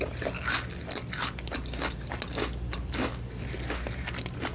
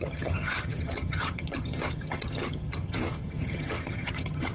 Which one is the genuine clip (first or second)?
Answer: first